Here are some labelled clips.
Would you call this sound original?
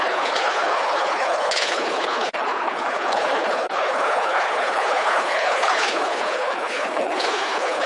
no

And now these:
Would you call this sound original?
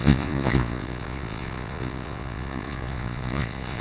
no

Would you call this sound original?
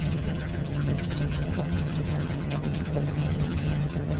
no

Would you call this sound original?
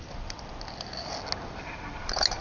yes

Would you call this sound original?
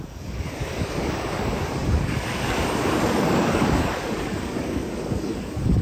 no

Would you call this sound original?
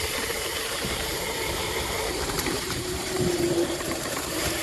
no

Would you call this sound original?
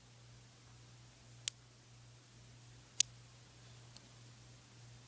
yes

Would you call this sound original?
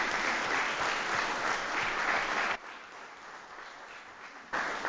yes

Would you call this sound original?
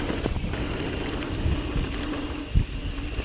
yes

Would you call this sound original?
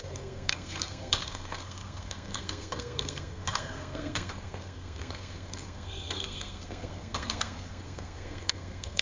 no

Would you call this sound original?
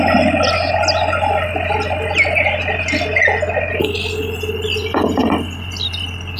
yes